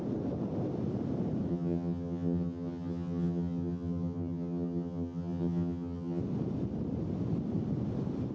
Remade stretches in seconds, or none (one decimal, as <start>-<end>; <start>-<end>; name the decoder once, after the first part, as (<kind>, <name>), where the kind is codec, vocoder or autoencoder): 1.5-6.2 (vocoder, HiFi-GAN)